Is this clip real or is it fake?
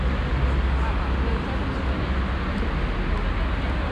real